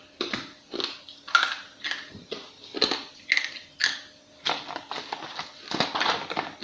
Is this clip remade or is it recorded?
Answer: recorded